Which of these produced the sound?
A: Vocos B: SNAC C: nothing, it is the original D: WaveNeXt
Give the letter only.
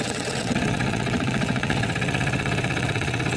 D